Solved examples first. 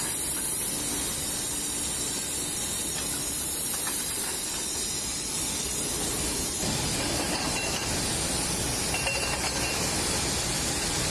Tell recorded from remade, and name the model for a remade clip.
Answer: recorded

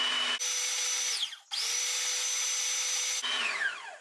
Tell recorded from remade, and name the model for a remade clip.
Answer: recorded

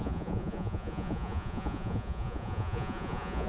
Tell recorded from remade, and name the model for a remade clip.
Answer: remade, vocoder, Vocos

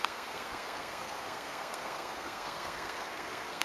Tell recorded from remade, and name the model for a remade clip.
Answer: remade, codec, SNAC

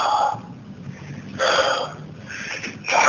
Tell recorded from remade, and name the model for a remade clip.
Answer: recorded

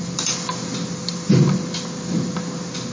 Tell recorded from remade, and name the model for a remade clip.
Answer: recorded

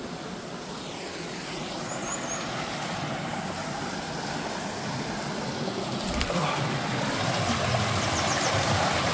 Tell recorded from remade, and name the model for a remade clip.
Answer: recorded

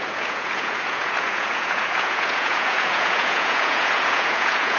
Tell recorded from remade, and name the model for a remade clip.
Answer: remade, vocoder, Vocos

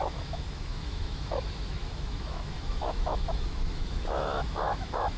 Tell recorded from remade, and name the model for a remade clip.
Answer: remade, autoencoder, DAC-VAE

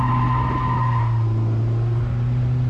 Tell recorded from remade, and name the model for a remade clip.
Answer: recorded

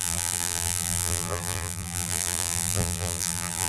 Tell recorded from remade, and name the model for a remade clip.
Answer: remade, vocoder, BigVGAN v2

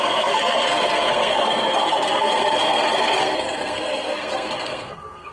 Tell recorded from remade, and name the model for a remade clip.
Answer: remade, codec, SNAC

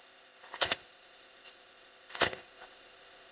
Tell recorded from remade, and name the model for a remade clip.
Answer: remade, codec, ZipCodec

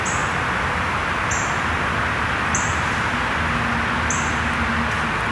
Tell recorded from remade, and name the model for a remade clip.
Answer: recorded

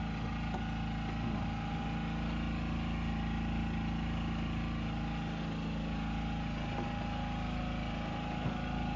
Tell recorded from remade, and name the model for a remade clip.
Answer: recorded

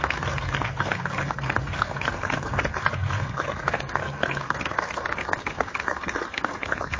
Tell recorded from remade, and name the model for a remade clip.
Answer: remade, codec, SNAC